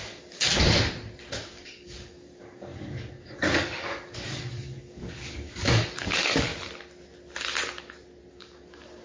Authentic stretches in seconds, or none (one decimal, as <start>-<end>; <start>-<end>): 0.5-1.4; 6.5-8.3

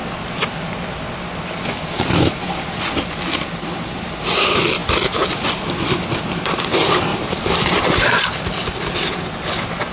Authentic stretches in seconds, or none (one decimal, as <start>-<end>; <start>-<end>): 0.0-7.1; 8.7-9.9

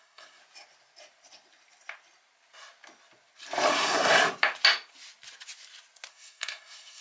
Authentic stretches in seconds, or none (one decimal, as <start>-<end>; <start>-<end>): 0.4-3.7; 4.2-6.1

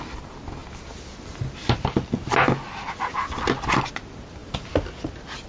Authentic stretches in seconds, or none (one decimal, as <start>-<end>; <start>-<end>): 0.0-5.5

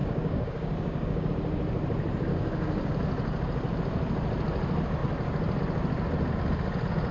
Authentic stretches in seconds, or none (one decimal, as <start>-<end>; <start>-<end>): 1.3-2.3; 2.9-7.1

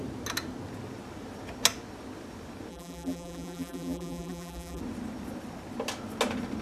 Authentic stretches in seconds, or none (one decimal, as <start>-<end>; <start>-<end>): 0.0-2.7; 4.8-6.6